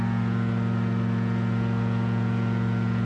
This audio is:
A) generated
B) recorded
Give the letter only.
B